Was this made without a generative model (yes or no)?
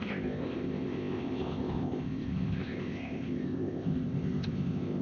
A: no